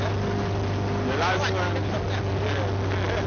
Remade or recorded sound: recorded